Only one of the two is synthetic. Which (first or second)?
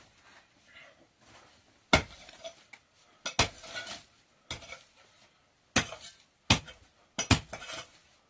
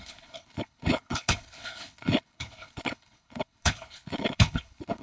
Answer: second